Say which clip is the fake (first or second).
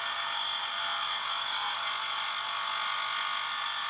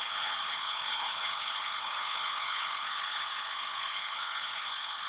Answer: second